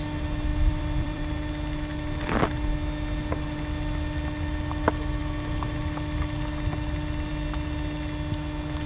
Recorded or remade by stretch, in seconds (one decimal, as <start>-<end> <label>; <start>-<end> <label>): 0.0-0.5 recorded; 0.5-1.3 remade; 1.3-8.9 recorded